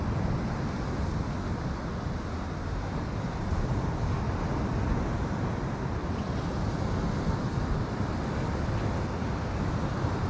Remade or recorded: recorded